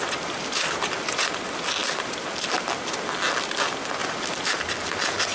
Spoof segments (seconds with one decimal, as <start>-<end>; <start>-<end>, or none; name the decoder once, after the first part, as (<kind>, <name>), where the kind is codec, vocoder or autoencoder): none